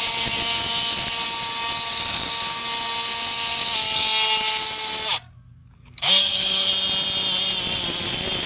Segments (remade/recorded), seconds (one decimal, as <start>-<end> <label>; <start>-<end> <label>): 0.0-5.6 recorded; 5.6-6.7 remade; 6.7-8.5 recorded